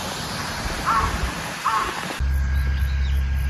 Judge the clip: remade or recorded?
recorded